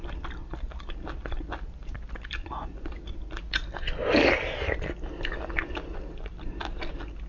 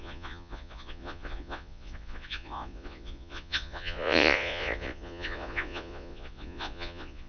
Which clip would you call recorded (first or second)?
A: first